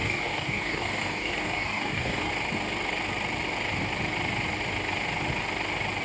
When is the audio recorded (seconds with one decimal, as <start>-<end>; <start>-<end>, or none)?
2.3-6.0